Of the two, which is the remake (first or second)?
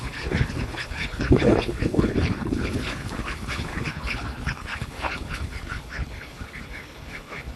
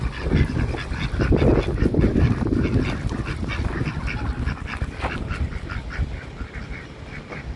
first